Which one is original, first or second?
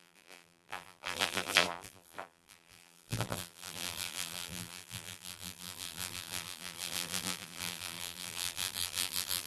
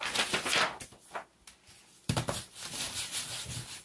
second